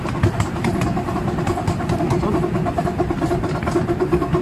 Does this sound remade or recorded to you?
recorded